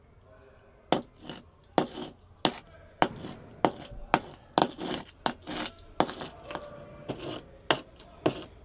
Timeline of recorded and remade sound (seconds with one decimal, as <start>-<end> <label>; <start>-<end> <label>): 0.0-8.6 recorded